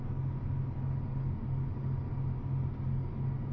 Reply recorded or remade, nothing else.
recorded